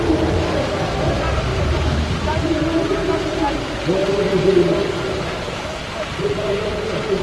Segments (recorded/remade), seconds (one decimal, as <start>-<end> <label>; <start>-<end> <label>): 0.0-7.2 recorded